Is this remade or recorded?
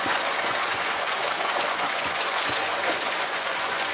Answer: remade